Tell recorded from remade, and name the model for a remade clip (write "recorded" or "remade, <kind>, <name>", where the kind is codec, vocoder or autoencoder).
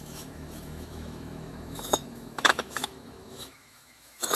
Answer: remade, autoencoder, DAC-VAE